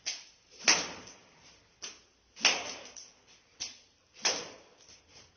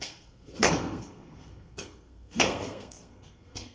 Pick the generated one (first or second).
second